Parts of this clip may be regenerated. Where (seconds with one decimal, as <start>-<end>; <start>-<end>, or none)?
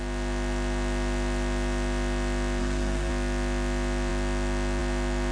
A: 2.6-3.1